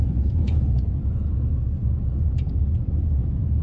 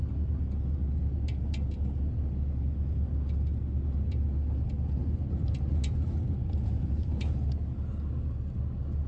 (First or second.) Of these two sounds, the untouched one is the second